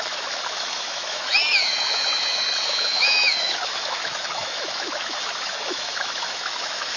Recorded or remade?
remade